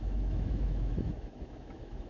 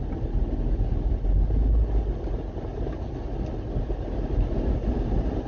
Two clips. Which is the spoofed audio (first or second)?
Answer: first